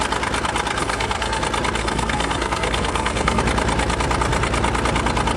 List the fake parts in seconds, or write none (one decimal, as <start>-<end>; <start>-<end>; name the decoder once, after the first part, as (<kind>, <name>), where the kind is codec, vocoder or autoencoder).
0.8-1.4 (codec, SNAC); 1.8-3.4